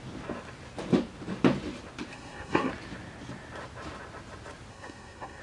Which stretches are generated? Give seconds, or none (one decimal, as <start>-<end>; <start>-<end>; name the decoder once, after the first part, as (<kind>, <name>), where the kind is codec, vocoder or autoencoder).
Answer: 2.1-2.7 (codec, SNAC); 4.7-5.4